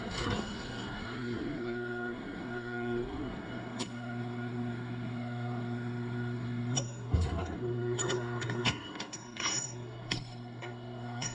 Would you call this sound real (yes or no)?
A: no